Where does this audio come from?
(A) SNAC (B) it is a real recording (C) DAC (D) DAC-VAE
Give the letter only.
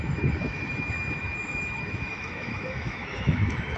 D